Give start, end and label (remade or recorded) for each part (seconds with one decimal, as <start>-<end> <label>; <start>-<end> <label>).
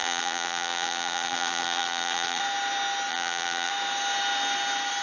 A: 0.0-2.4 remade; 2.4-3.1 recorded; 3.1-3.7 remade; 3.7-5.0 recorded